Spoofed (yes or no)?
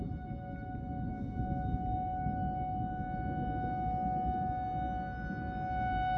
no